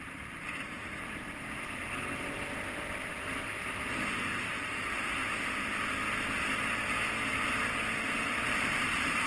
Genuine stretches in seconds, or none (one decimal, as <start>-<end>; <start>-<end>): 5.2-7.9